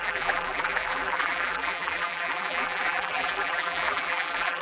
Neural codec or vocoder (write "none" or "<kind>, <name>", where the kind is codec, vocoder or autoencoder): vocoder, BigVGAN v2